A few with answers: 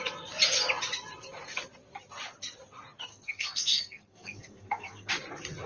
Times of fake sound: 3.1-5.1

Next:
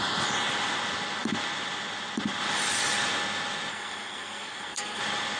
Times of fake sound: 3.7-5.0

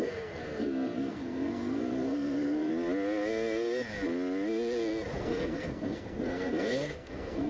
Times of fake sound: 0.0-2.7; 5.2-7.5

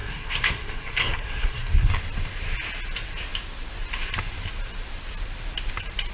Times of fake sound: 0.0-1.9

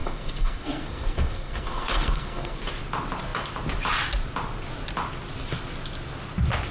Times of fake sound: 0.0-2.7

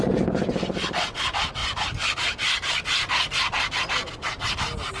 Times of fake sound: none